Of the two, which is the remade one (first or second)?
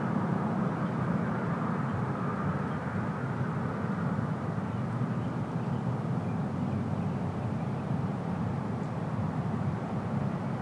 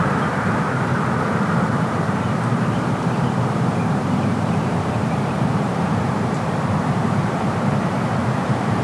second